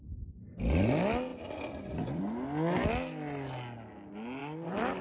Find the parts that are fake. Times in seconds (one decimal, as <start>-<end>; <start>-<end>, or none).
1.3-2.2; 4.4-5.0